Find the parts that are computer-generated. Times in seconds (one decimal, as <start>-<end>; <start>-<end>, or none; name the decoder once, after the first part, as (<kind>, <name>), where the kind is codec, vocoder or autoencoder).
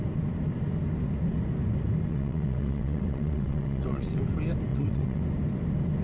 2.1-4.2 (vocoder, WaveNeXt); 4.7-5.2